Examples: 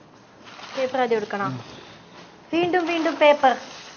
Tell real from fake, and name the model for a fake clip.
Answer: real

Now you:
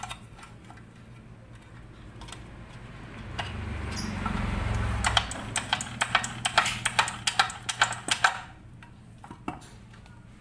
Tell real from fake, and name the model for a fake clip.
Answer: real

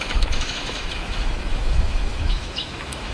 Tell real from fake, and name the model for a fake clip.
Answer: fake, autoencoder, DAC-VAE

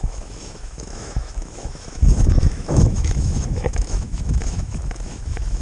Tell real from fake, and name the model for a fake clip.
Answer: fake, autoencoder, DAC-VAE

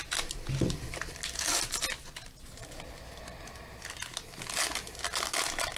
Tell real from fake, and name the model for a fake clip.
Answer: real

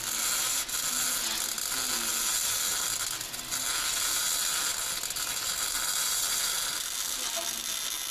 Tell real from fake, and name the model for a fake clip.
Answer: real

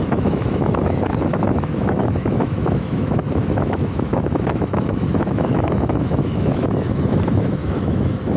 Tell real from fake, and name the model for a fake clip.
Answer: fake, autoencoder, DAC-VAE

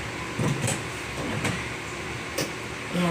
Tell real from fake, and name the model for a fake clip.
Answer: real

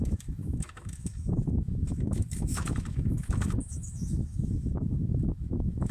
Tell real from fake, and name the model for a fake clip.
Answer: fake, autoencoder, DAC-VAE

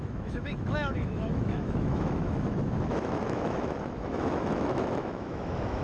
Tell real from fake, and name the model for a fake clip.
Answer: fake, autoencoder, DAC-VAE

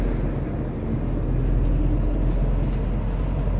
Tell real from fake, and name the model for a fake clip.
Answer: real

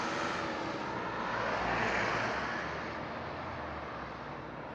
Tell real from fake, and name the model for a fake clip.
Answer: real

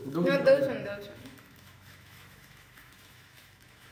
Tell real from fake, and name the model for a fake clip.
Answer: fake, autoencoder, DAC-VAE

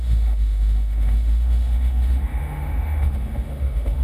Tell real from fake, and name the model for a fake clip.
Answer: fake, autoencoder, DAC-VAE